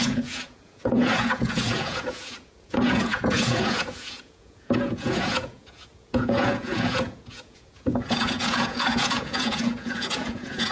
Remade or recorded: remade